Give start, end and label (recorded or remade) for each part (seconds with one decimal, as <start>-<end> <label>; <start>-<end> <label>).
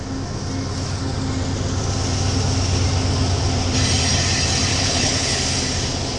0.0-4.7 recorded; 4.7-5.4 remade; 5.4-6.2 recorded